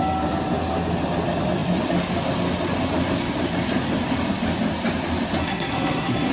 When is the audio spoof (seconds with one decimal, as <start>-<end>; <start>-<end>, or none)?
5.4-6.3